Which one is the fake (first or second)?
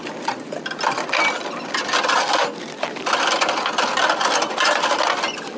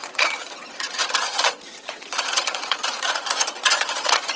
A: second